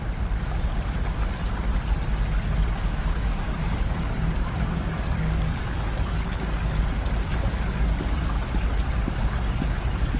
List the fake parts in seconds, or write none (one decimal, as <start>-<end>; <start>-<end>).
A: 3.2-6.8; 7.3-8.4